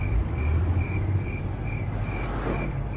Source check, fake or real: real